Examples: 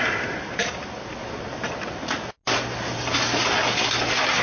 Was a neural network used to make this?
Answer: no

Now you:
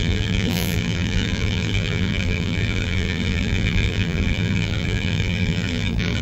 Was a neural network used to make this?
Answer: yes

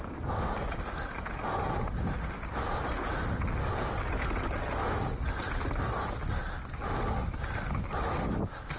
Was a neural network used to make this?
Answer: no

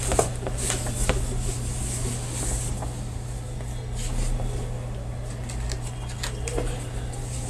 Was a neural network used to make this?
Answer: no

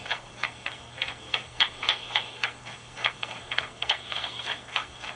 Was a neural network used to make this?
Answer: yes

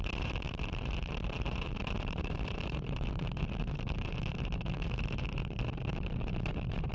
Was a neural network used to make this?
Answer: yes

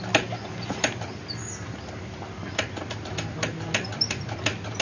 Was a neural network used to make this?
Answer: no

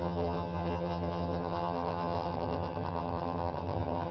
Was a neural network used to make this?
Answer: yes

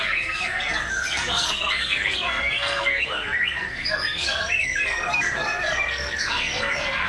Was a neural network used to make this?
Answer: yes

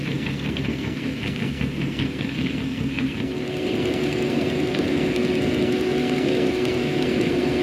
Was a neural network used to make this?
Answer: yes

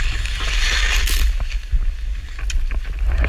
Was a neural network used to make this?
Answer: no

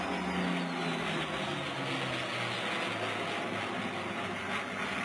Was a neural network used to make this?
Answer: no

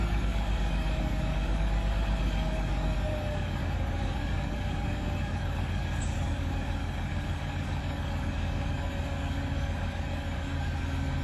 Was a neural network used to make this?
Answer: yes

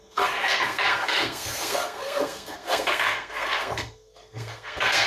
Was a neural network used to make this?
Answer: yes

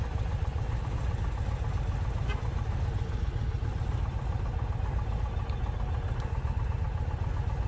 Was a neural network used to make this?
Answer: no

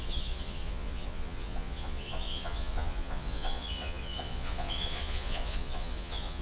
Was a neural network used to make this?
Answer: yes